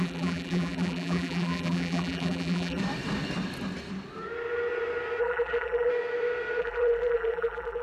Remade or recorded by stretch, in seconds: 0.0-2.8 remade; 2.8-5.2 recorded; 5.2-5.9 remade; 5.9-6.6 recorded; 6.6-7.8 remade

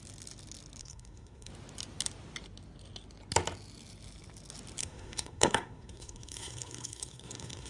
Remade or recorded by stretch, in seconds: 0.0-0.8 recorded; 0.8-1.5 remade; 1.5-4.8 recorded; 4.8-7.7 remade

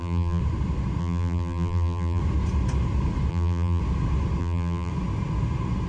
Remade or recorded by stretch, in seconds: 0.0-0.4 remade; 0.4-1.0 recorded; 1.0-2.2 remade; 2.2-3.3 recorded; 3.3-3.8 remade; 3.8-4.4 recorded; 4.4-4.9 remade; 4.9-5.9 recorded

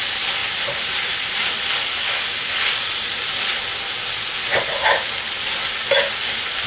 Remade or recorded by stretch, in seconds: 0.0-0.4 recorded; 0.4-1.5 remade; 1.5-6.7 recorded

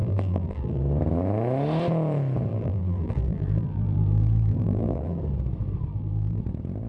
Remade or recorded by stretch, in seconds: 0.0-0.8 remade; 0.8-2.5 recorded; 2.5-5.2 remade; 5.2-5.9 recorded; 5.9-6.4 remade; 6.4-6.9 recorded

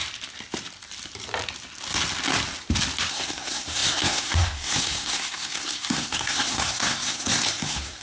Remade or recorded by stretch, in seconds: 0.0-3.1 recorded; 3.1-8.0 remade

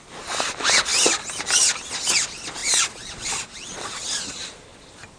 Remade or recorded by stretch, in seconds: 0.0-2.6 recorded; 2.6-3.9 remade; 3.9-5.2 recorded

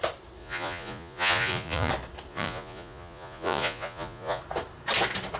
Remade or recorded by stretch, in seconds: 0.0-0.4 recorded; 0.4-1.9 remade; 1.9-2.3 recorded; 2.3-4.4 remade; 4.4-5.4 recorded